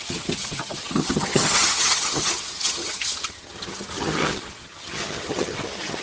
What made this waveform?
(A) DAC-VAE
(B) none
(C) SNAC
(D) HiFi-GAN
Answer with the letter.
D